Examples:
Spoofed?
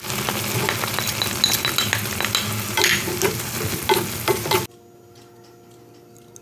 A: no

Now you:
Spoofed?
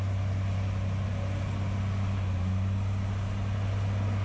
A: no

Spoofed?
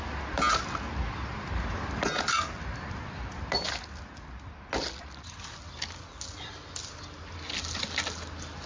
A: no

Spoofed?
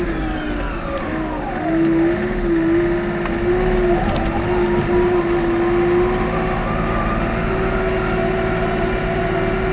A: no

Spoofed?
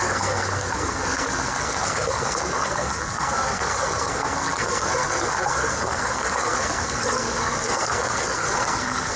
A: yes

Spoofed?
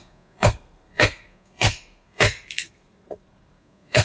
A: yes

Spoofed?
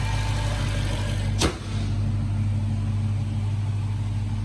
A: no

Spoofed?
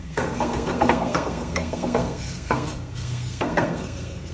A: yes